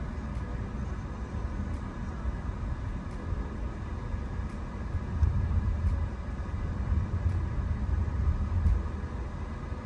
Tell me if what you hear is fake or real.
real